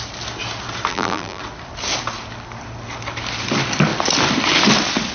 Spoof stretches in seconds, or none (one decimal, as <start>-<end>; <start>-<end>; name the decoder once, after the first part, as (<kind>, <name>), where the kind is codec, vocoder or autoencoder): 0.9-1.4 (vocoder, BigVGAN v2)